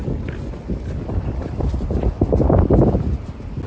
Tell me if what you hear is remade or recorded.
recorded